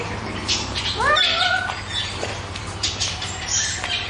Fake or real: fake